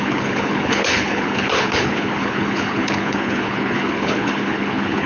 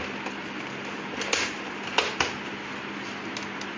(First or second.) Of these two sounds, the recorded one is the second